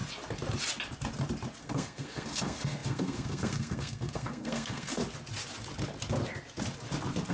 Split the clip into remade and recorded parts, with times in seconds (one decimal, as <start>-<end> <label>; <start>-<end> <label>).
0.0-1.6 recorded; 1.6-5.0 remade; 5.0-7.3 recorded